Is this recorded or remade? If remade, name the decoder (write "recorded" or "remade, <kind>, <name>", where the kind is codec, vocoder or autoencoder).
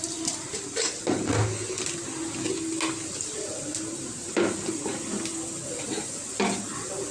recorded